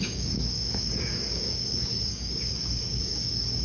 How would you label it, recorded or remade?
remade